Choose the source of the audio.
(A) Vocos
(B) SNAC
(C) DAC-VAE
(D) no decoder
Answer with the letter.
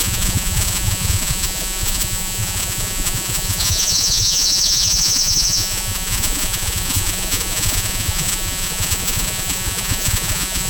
A